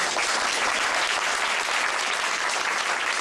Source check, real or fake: real